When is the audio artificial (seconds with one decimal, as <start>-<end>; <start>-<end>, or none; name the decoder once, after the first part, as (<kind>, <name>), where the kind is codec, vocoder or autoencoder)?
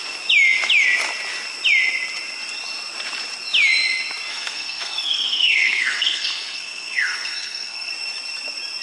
4.3-7.9 (codec, SNAC)